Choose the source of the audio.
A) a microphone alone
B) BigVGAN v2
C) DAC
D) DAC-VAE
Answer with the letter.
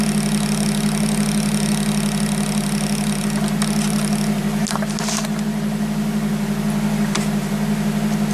A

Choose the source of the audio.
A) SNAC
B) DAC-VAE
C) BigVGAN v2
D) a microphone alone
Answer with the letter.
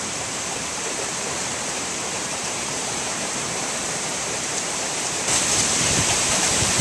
C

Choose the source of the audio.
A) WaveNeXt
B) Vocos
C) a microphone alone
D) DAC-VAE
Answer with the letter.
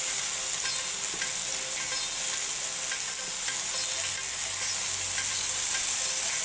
C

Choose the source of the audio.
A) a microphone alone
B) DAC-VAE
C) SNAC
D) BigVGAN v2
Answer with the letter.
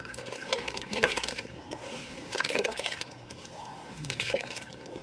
C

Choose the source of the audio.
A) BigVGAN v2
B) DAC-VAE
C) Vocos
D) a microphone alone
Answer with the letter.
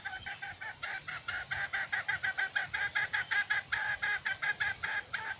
D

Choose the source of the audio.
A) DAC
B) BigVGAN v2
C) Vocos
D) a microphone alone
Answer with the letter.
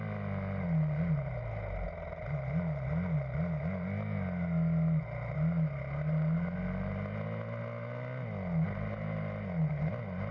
D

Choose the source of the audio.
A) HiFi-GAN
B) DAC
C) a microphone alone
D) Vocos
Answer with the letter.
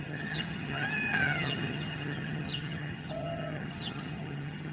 A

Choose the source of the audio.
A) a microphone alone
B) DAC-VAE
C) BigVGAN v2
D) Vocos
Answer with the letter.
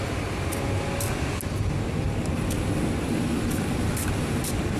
A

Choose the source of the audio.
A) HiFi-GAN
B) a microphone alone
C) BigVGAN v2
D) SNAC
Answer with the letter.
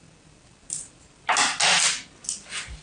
B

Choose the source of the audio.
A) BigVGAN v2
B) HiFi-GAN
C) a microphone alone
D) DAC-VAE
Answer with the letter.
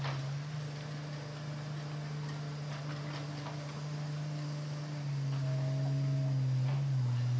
C